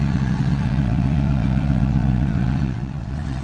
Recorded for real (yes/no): no